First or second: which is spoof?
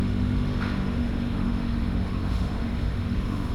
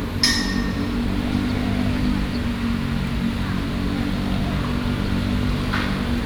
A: first